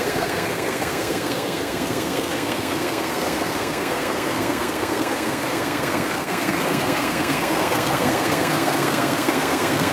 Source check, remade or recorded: remade